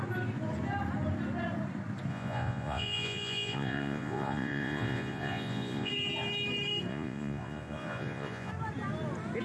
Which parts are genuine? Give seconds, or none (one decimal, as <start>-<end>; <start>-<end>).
0.0-2.1; 5.9-6.9; 8.5-9.4

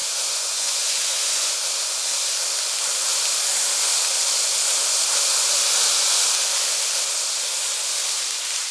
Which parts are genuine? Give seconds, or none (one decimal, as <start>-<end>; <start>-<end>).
1.6-8.7

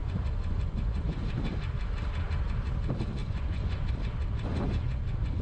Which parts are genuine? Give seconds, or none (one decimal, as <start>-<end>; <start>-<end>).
1.4-3.2; 3.9-4.5

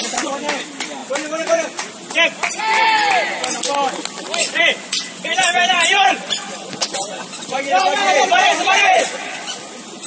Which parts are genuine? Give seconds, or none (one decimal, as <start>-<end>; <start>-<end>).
0.0-4.4; 9.6-10.1